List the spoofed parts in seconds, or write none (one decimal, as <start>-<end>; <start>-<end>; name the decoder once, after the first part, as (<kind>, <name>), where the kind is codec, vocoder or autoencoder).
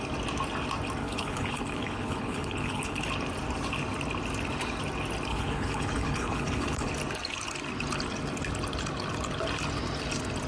1.0-3.0 (codec, HILCodec); 5.3-6.9